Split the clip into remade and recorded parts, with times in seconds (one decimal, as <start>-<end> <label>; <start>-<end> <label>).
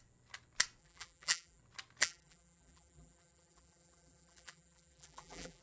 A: 0.0-0.8 recorded; 0.8-1.6 remade; 1.6-2.0 recorded; 2.0-5.6 remade